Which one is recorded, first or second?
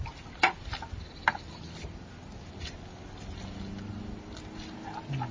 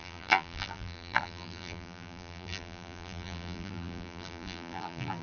first